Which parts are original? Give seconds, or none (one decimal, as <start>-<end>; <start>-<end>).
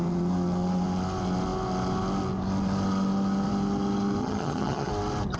0.0-4.2; 4.9-5.4